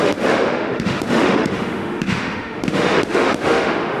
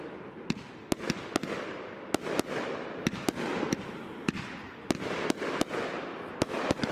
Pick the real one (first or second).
second